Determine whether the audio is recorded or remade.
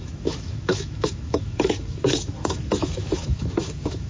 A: remade